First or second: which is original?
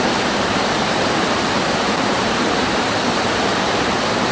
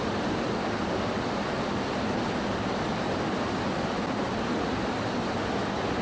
second